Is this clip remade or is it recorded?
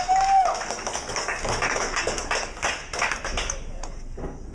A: remade